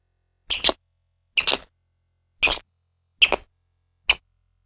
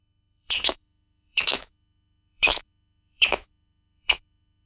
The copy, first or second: second